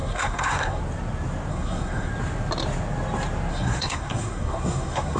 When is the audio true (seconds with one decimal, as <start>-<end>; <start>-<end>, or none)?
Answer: 0.8-1.5; 2.1-3.5